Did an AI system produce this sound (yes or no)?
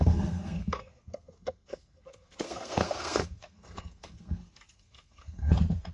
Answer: yes